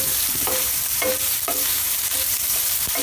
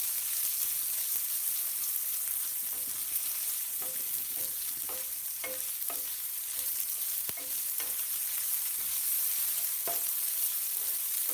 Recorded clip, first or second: second